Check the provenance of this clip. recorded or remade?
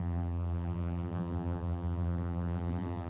remade